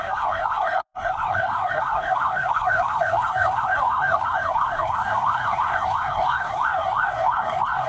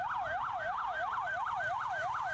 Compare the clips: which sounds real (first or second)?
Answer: second